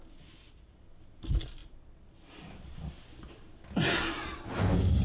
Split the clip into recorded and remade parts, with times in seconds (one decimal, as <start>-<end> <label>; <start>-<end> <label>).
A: 0.0-5.0 recorded